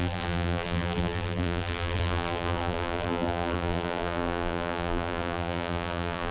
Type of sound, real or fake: fake